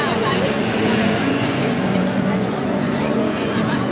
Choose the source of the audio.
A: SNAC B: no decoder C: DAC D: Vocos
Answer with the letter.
D